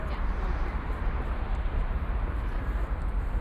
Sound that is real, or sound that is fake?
fake